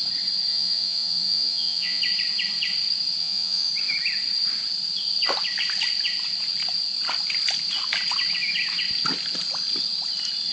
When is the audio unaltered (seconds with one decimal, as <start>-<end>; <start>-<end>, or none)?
0.0-0.5; 2.0-3.2; 3.7-10.5